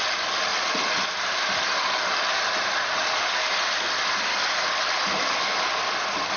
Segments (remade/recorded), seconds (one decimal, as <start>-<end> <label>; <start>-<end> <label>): 0.0-6.4 recorded

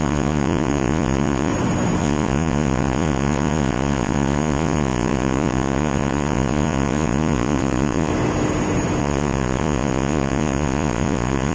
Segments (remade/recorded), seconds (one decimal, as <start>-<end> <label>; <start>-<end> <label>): 0.0-1.5 remade; 1.5-2.0 recorded; 2.0-8.1 remade; 8.1-9.0 recorded; 9.0-11.5 remade

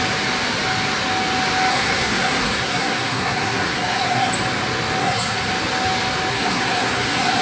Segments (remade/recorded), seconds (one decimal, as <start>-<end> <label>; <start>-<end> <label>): 0.0-1.7 recorded; 1.7-4.3 remade; 4.3-5.0 recorded; 5.0-5.5 remade; 5.5-6.3 recorded; 6.3-7.4 remade